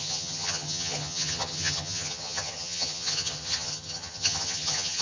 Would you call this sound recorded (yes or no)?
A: no